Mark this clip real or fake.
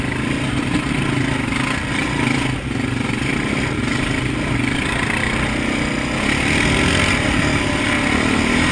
real